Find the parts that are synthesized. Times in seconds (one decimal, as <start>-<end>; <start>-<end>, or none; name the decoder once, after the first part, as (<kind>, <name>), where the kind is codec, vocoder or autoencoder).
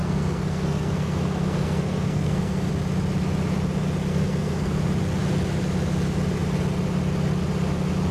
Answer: 0.0-2.7 (codec, SNAC); 4.1-4.8